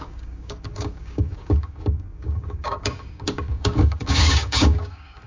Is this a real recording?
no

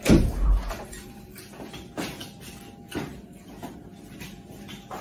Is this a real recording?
yes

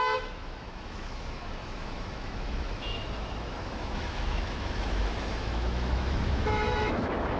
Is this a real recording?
no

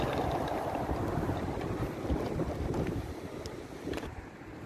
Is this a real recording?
no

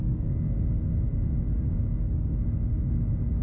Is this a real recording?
yes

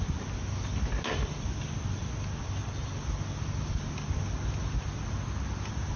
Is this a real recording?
yes